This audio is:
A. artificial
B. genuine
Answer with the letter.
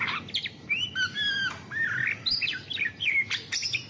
B